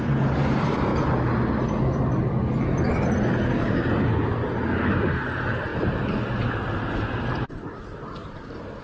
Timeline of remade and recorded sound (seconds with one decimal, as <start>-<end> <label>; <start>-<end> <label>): 0.0-5.7 recorded; 5.7-8.8 remade